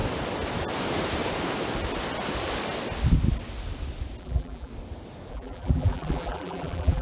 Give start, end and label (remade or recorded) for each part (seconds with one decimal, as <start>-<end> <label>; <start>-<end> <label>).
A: 0.0-4.2 recorded; 4.2-4.7 remade; 4.7-5.3 recorded; 5.3-7.0 remade